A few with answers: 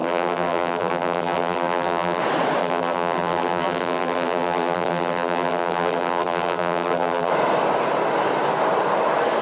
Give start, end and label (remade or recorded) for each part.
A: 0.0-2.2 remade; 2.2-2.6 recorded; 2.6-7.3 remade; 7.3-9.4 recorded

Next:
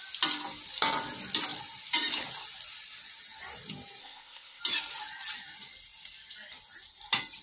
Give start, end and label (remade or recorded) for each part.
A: 0.0-4.0 recorded; 4.0-4.6 remade; 4.6-7.4 recorded

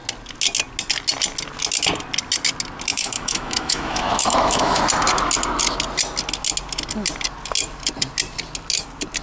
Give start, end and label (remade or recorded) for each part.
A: 0.0-2.9 recorded; 2.9-4.8 remade; 4.8-9.2 recorded

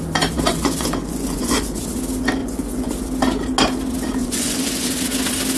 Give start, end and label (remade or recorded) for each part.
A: 0.0-0.5 recorded; 0.5-1.8 remade; 1.8-2.4 recorded; 2.4-2.9 remade; 2.9-4.2 recorded; 4.2-4.9 remade; 4.9-5.6 recorded

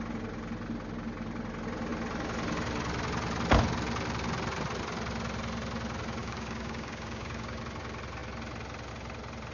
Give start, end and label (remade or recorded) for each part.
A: 0.0-6.2 recorded; 6.2-7.6 remade; 7.6-9.5 recorded

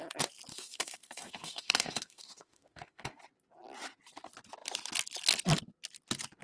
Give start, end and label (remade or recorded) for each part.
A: 0.0-0.5 recorded; 0.5-3.2 remade; 3.2-6.4 recorded

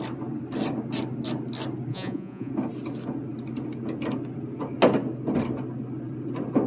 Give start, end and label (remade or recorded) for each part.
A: 0.0-1.9 recorded; 1.9-2.5 remade; 2.5-6.7 recorded